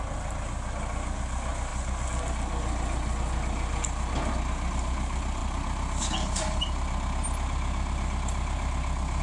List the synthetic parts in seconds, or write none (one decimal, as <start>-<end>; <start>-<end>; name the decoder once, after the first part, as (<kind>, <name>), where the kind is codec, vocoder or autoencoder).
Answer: none